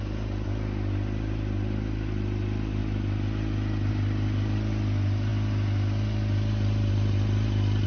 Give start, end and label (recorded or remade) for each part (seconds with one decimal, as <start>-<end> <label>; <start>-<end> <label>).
0.0-7.9 recorded